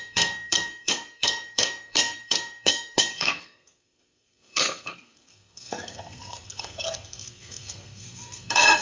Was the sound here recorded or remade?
remade